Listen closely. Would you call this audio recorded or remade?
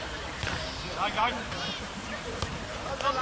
remade